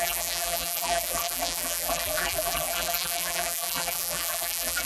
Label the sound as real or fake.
fake